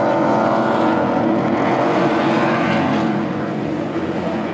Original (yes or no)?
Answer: no